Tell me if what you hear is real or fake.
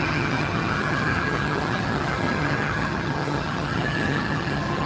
fake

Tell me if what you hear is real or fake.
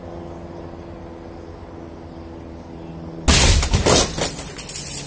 real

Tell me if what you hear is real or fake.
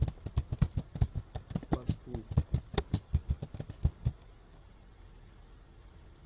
real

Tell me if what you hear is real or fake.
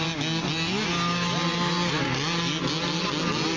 real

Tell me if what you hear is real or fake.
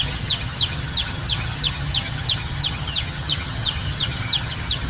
fake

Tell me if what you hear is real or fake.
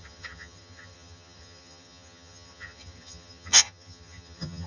fake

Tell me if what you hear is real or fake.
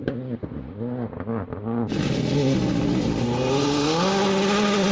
real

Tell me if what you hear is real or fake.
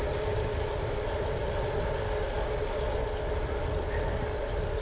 real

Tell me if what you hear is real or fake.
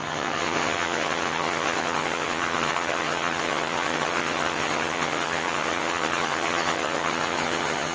fake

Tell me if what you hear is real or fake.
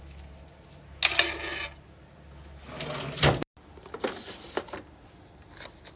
real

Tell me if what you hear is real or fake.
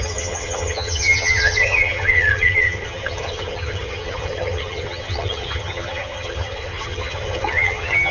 fake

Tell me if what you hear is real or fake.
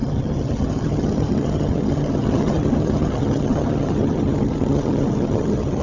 fake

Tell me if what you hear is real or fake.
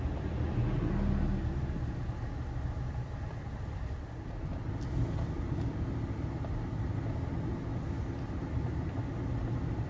real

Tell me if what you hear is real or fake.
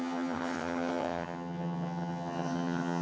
fake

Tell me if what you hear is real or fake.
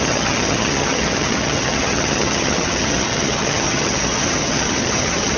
fake